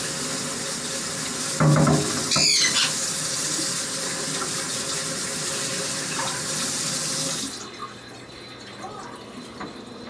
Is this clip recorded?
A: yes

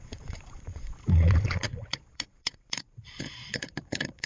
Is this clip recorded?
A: no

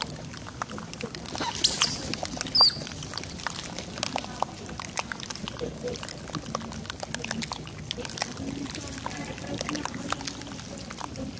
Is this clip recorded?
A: yes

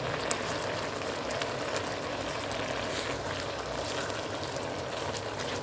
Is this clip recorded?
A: yes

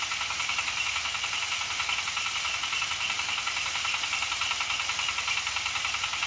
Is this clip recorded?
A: yes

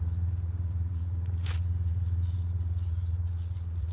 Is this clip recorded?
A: no